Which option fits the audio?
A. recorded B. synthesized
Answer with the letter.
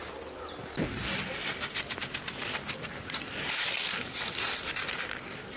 A